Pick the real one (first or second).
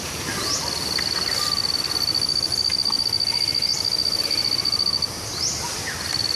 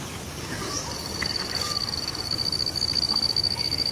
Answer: first